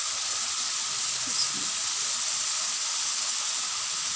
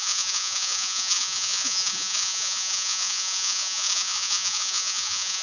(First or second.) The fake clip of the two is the second